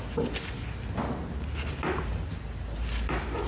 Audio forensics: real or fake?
real